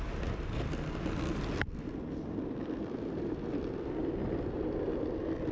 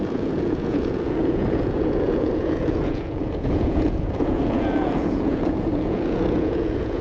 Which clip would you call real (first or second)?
first